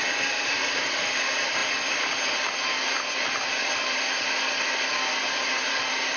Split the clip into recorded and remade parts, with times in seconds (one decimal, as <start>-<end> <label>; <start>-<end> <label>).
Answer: 0.0-1.6 remade; 1.6-5.3 recorded; 5.3-6.2 remade